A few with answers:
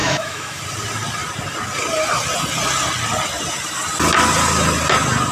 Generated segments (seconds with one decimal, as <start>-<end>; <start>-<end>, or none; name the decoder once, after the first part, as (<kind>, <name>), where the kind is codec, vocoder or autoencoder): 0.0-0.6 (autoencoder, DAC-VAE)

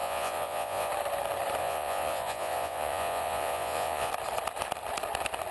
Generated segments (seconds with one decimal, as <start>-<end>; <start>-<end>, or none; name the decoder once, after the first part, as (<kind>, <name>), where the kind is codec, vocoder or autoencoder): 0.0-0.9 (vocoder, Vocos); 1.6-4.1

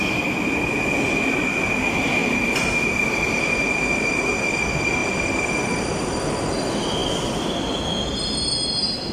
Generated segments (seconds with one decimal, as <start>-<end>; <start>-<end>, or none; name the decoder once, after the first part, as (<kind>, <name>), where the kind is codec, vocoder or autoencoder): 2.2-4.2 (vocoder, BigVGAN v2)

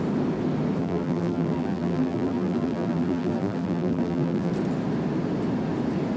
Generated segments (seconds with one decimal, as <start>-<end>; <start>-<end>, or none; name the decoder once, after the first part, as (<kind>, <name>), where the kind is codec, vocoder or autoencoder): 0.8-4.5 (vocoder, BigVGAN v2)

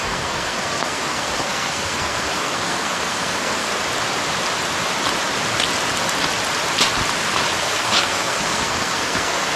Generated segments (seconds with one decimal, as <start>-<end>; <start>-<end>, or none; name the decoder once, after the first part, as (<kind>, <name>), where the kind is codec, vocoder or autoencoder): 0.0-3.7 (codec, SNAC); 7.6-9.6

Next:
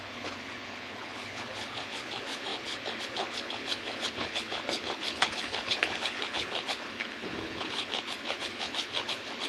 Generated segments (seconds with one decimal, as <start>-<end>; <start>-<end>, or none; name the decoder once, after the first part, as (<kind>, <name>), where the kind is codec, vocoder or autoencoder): 0.0-9.5 (codec, HILCodec)

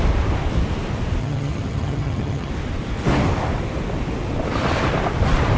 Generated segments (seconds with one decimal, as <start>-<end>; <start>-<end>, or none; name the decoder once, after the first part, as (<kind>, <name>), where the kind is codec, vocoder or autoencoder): 1.2-2.5 (vocoder, HiFi-GAN)

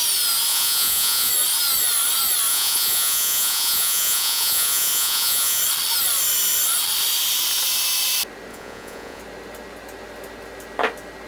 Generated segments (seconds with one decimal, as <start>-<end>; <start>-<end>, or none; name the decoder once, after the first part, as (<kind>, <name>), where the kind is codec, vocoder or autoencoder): 0.5-1.3 (vocoder, Vocos); 2.5-5.6; 8.5-9.2